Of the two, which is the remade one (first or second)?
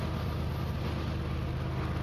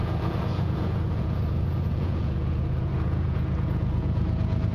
second